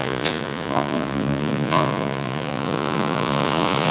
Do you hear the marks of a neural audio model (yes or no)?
yes